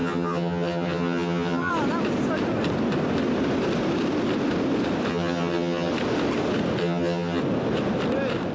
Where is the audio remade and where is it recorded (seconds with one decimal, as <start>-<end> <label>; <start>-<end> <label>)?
0.0-1.7 remade; 1.7-5.1 recorded; 5.1-5.9 remade; 5.9-6.8 recorded; 6.8-7.4 remade; 7.4-8.5 recorded